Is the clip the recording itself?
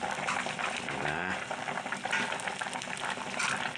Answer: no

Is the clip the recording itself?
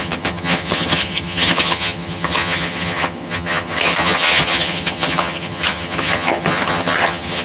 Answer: no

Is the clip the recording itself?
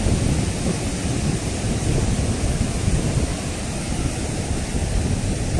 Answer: yes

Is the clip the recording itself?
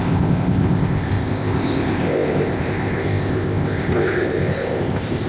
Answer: no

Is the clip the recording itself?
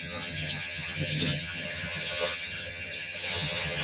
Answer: no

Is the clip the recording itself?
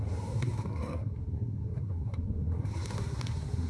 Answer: no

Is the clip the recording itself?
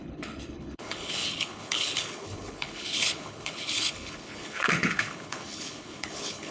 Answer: no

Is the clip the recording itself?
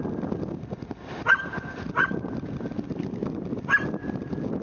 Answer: yes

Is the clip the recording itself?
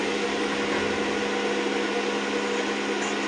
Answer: yes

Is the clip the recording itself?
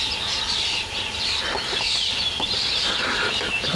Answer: no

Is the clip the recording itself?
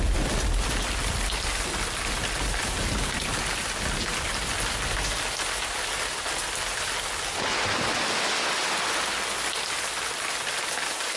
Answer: yes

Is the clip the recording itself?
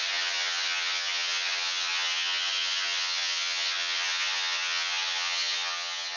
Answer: no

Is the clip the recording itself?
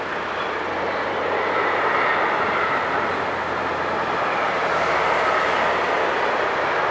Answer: yes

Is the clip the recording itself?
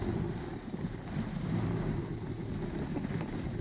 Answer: yes